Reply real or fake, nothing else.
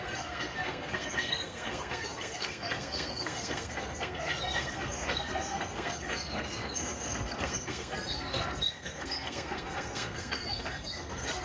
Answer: fake